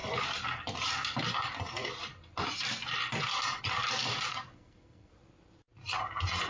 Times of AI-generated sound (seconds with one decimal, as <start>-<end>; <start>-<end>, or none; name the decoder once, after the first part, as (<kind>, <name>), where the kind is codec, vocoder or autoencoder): 4.3-5.1 (codec, SNAC)